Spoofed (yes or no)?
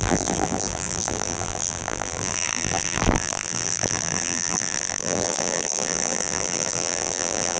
yes